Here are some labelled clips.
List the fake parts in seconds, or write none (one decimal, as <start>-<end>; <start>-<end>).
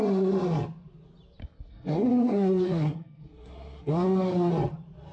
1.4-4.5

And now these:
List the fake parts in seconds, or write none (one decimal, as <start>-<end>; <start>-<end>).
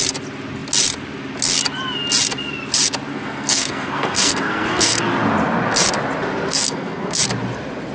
3.1-5.0; 6.5-7.2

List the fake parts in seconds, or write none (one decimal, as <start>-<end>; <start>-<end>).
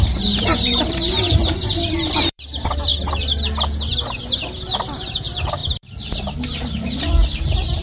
0.0-1.4; 2.1-2.9; 4.5-7.8